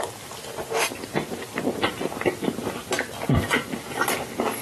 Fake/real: fake